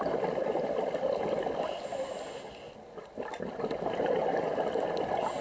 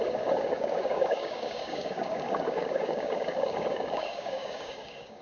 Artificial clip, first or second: second